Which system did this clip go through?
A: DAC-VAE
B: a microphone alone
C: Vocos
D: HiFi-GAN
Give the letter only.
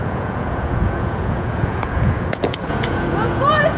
C